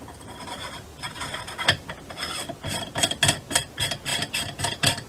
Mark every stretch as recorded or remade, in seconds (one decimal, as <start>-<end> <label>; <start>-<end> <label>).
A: 0.0-4.1 recorded; 4.1-5.1 remade